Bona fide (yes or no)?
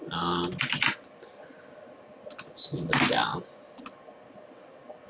yes